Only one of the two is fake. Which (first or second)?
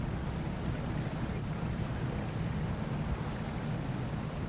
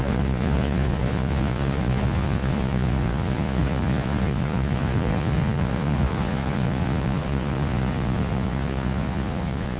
second